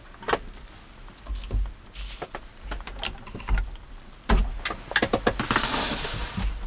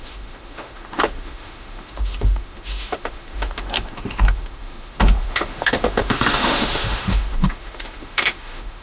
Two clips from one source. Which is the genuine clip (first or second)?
first